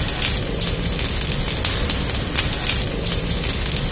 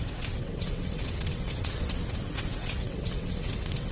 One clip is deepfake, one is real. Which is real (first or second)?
first